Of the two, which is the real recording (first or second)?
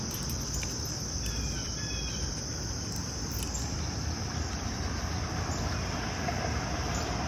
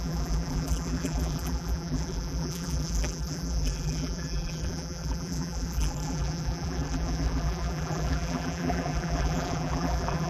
first